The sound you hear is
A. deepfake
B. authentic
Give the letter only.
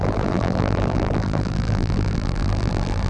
A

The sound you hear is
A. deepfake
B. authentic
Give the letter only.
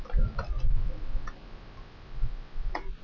B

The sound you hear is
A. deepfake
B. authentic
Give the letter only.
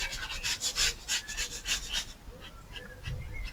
B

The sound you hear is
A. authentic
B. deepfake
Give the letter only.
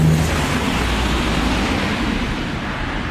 A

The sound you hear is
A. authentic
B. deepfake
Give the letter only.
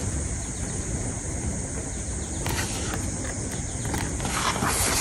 A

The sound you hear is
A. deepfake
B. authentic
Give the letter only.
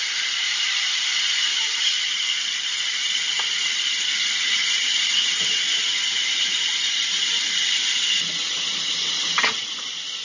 A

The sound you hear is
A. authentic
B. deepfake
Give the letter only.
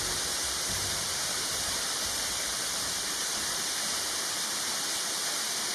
B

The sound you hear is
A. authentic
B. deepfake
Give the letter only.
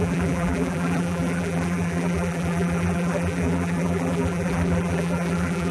B